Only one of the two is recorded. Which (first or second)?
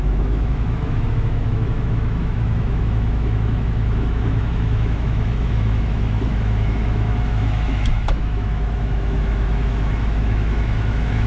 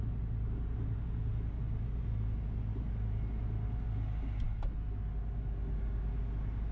second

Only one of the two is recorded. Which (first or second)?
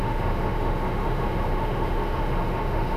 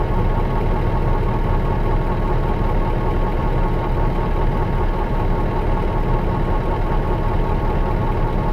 second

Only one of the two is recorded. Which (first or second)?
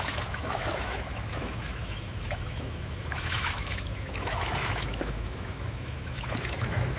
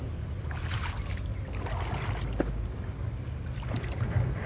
second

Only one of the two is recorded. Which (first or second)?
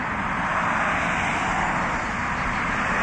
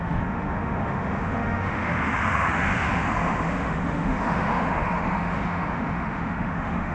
first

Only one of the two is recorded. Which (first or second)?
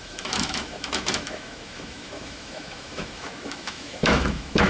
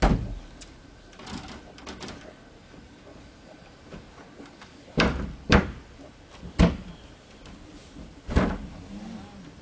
second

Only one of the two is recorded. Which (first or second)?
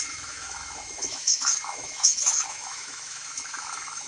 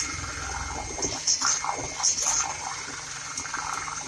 second